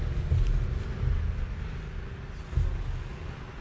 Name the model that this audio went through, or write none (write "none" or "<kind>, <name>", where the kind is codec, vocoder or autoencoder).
none